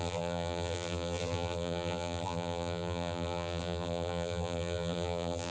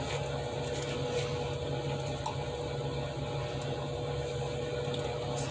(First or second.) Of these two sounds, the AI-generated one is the first